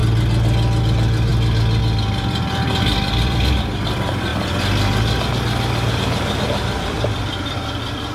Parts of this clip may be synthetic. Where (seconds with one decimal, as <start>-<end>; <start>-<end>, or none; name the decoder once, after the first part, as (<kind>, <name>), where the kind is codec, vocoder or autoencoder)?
0.8-1.3 (vocoder, BigVGAN v2); 1.8-4.3; 5.9-8.1